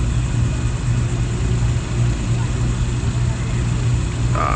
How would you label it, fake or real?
real